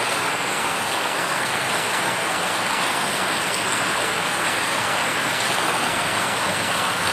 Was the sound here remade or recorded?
remade